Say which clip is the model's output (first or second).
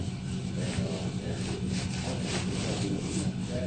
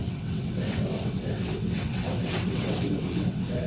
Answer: second